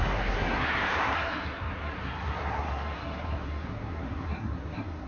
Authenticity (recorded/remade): remade